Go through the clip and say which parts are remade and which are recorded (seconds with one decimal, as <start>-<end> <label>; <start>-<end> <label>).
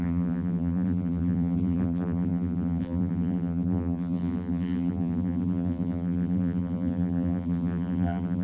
0.0-8.4 remade